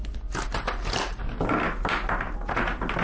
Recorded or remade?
recorded